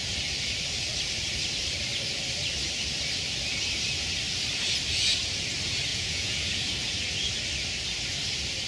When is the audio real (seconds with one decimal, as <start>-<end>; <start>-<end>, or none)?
0.0-5.9; 6.6-8.7